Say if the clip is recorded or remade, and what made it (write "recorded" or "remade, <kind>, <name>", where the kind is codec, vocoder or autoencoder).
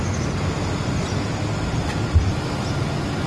recorded